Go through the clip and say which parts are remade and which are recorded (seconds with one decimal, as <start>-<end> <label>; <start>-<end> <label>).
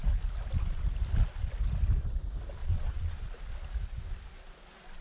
0.0-2.6 recorded; 2.6-3.2 remade; 3.2-5.0 recorded